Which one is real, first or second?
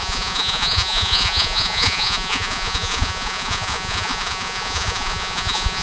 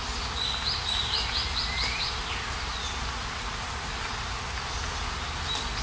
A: second